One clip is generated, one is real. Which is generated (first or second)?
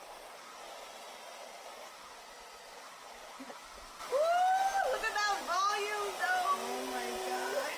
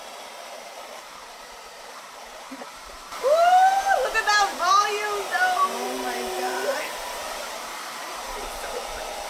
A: second